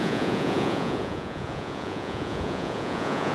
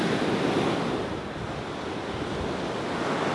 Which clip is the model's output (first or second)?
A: first